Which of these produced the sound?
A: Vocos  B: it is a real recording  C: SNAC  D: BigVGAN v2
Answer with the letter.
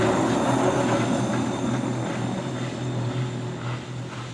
B